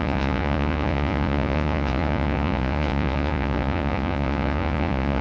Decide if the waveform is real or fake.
fake